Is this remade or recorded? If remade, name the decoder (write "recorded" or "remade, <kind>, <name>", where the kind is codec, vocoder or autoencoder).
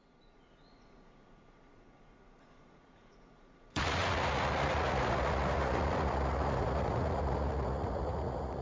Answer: remade, vocoder, Vocos